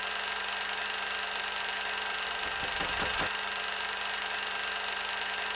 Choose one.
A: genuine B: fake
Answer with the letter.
A